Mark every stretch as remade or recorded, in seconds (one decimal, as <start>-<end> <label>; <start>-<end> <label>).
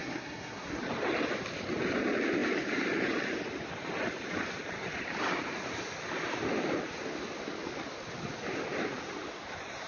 0.0-0.8 remade; 0.8-9.9 recorded